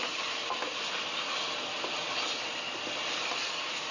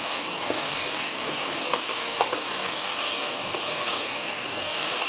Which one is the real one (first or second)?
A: first